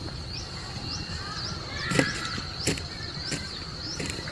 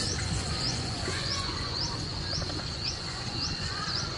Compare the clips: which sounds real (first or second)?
first